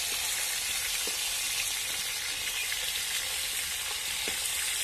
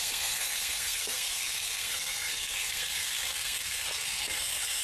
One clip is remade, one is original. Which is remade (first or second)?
second